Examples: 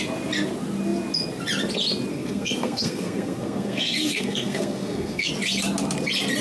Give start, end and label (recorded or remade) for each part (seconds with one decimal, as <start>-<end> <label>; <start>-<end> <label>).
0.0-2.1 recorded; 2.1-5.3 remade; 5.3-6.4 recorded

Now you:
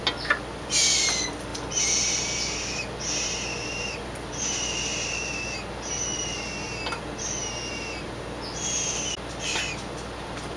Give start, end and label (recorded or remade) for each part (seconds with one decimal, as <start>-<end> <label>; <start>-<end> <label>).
0.0-10.6 recorded

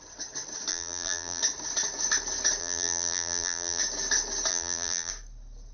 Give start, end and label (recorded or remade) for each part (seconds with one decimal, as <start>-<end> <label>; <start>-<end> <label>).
0.0-0.7 recorded; 0.7-1.4 remade; 1.4-2.6 recorded; 2.6-3.8 remade; 3.8-4.5 recorded; 4.5-5.1 remade; 5.1-5.7 recorded

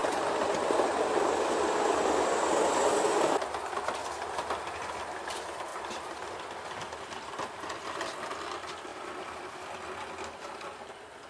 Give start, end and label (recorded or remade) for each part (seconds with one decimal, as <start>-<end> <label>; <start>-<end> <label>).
0.0-5.7 recorded; 5.7-6.3 remade; 6.3-8.9 recorded; 8.9-9.4 remade; 9.4-11.3 recorded

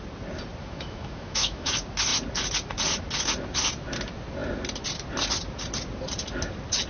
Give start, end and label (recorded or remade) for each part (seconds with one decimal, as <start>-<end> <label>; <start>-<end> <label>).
0.0-0.6 recorded; 0.6-1.7 remade; 1.7-6.9 recorded